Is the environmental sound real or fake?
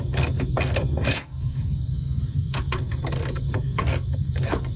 fake